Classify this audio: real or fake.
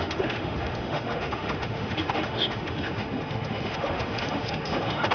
fake